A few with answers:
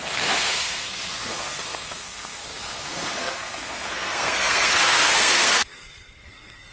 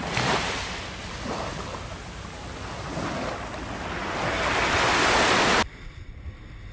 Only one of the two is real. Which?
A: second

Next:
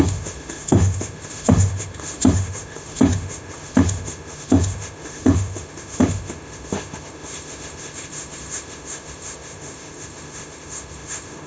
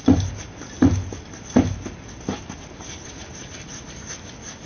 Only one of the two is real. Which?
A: second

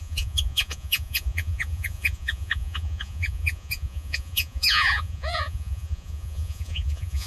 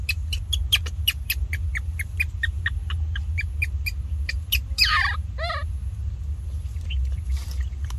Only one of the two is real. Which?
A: second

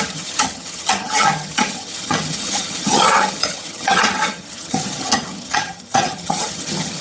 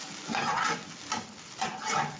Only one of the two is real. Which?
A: second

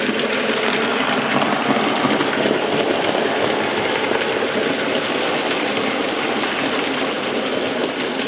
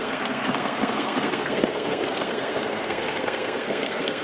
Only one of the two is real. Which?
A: first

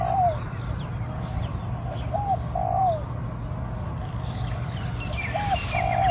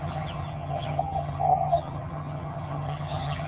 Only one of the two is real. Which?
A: first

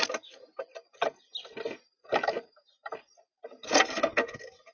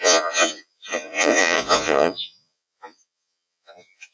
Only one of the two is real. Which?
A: first